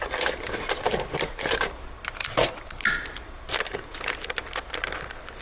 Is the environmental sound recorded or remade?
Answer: recorded